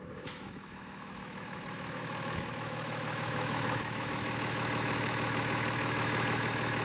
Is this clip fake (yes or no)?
yes